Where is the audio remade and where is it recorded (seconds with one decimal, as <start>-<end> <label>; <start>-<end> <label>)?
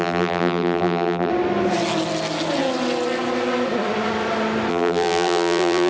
0.0-1.3 remade; 1.3-4.7 recorded; 4.7-5.9 remade